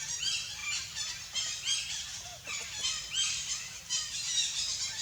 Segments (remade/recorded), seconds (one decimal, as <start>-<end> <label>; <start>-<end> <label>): 0.0-0.6 recorded; 0.6-1.1 remade; 1.1-5.0 recorded